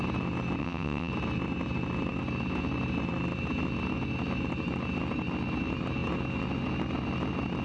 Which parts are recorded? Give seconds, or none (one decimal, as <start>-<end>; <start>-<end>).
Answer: 0.0-0.6; 1.1-7.6